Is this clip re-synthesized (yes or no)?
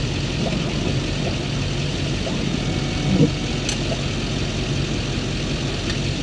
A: no